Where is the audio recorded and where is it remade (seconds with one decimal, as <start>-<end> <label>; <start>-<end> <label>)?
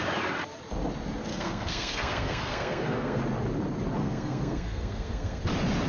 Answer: 0.0-1.3 recorded; 1.3-3.2 remade; 3.2-4.0 recorded; 4.0-5.4 remade; 5.4-5.9 recorded